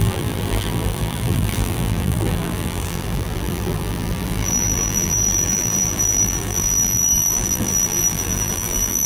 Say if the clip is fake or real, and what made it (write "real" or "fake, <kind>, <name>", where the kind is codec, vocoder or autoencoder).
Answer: fake, vocoder, BigVGAN v2